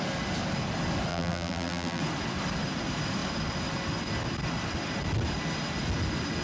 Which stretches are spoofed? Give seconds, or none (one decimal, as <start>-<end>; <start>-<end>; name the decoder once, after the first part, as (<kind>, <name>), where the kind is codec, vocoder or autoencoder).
1.1-2.0 (vocoder, BigVGAN v2)